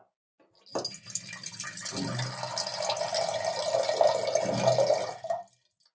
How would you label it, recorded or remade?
recorded